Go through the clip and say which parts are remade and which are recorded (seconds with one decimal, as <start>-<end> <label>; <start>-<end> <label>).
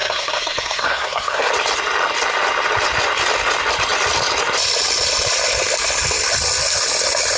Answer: 0.0-1.5 remade; 1.5-7.4 recorded